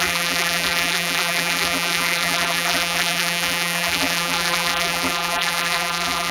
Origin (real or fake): fake